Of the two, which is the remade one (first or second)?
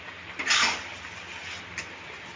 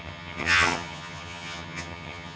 second